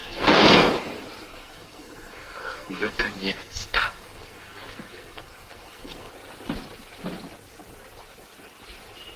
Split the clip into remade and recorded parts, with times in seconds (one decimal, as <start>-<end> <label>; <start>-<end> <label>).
0.0-0.7 remade; 0.7-1.3 recorded; 1.3-6.1 remade; 6.1-9.2 recorded